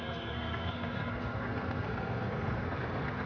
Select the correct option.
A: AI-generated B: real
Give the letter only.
A